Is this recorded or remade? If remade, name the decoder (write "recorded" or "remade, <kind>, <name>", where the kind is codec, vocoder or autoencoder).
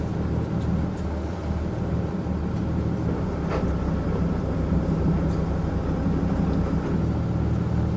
recorded